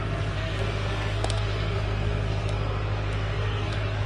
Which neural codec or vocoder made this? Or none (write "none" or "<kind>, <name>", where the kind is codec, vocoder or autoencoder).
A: codec, SNAC